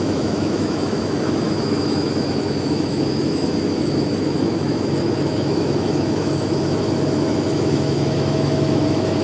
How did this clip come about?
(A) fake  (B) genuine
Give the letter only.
A